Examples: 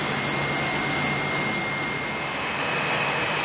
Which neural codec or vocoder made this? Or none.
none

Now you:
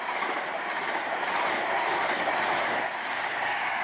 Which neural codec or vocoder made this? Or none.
vocoder, BigVGAN v2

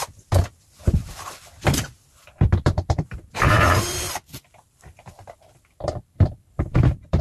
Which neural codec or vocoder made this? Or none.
vocoder, BigVGAN v2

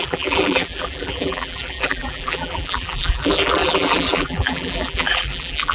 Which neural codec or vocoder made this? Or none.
vocoder, BigVGAN v2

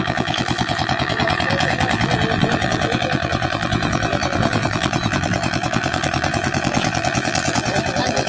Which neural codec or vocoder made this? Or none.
vocoder, BigVGAN v2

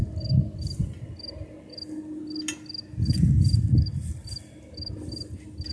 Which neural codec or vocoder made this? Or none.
none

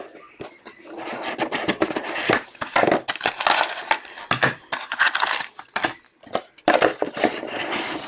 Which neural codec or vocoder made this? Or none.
vocoder, BigVGAN v2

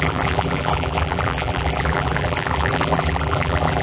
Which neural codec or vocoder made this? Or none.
vocoder, BigVGAN v2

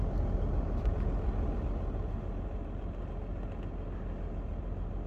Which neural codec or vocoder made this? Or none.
none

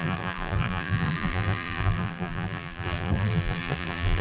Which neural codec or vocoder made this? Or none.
vocoder, BigVGAN v2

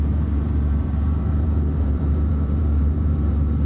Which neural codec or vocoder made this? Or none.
vocoder, BigVGAN v2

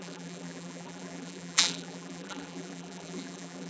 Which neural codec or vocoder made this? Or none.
vocoder, BigVGAN v2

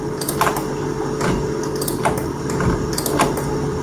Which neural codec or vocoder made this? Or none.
none